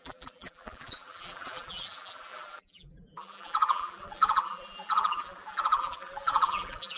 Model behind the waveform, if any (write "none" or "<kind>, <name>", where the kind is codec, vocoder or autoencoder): vocoder, BigVGAN v2